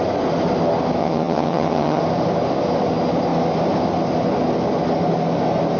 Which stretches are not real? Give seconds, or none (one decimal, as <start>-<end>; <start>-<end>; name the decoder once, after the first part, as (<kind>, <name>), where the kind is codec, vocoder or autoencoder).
1.0-2.0 (vocoder, HiFi-GAN)